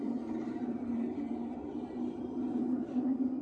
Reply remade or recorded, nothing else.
remade